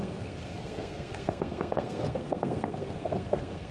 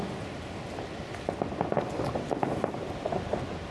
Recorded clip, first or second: second